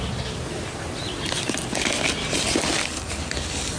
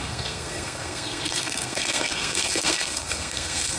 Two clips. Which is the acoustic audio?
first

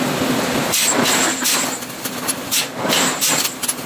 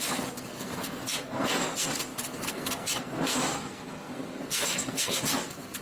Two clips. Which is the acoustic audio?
first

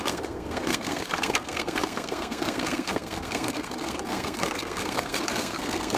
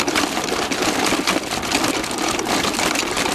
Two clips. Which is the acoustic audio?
second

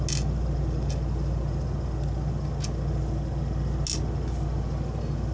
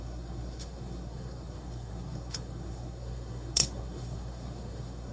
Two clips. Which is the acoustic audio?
first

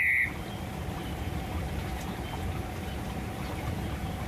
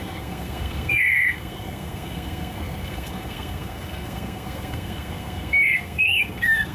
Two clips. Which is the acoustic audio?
first